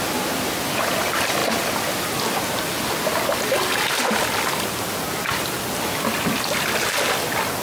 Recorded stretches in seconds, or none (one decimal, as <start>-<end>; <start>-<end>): 0.0-7.6